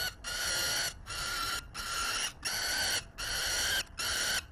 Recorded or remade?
recorded